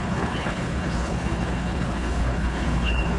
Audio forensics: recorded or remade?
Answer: remade